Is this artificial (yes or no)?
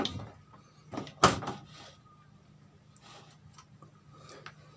no